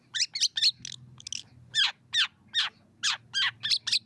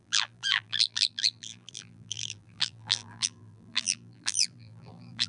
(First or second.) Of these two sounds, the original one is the first